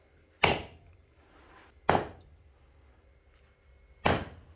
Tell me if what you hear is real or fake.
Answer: real